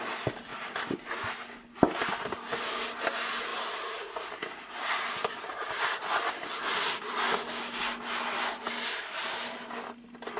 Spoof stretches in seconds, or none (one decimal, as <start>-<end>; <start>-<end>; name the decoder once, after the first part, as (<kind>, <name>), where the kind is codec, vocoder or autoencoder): none